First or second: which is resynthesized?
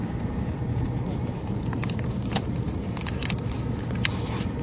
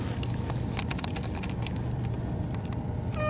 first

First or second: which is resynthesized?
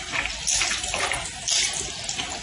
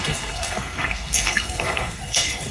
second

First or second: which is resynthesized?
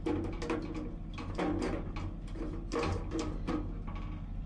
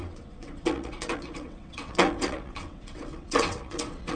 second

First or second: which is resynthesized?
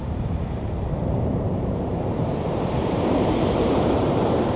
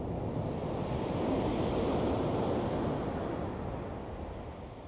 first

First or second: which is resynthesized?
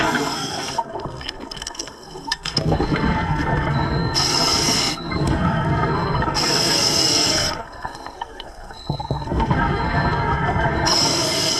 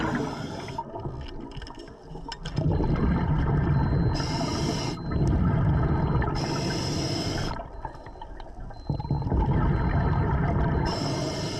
first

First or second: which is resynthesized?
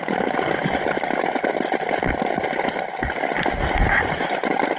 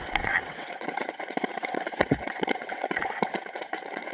second